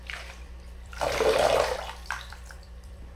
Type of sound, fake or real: fake